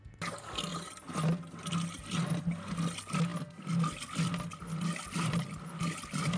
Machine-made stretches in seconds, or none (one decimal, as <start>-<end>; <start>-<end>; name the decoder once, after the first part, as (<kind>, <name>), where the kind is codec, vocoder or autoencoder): none